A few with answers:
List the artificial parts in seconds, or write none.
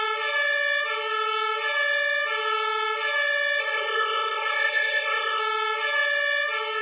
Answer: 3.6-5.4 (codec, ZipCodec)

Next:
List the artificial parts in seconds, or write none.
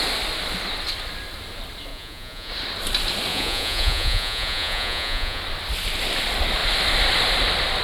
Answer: 1.9-2.5 (vocoder, Vocos); 3.3-5.4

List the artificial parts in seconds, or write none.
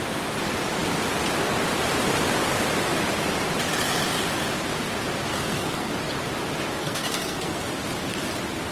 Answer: 5.3-5.9 (codec, SNAC); 6.8-7.7